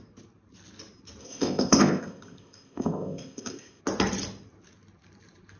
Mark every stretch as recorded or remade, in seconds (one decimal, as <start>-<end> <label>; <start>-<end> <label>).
0.0-1.2 recorded; 1.2-3.8 remade; 3.8-5.6 recorded

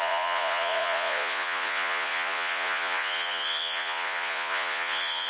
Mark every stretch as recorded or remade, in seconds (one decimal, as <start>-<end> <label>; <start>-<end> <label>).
0.0-5.3 remade

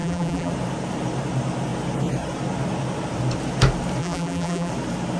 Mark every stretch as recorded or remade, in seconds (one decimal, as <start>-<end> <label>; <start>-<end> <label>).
0.0-0.5 remade; 0.5-4.0 recorded; 4.0-4.7 remade; 4.7-5.2 recorded

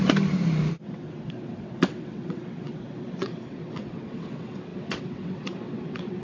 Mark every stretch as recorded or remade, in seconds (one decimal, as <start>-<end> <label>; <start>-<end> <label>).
0.0-0.7 recorded; 0.7-6.2 remade

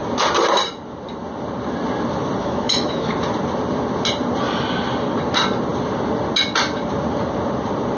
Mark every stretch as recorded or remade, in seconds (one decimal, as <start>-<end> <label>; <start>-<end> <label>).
0.0-2.4 recorded; 2.4-3.1 remade; 3.1-8.0 recorded